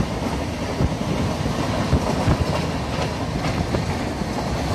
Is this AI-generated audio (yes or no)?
no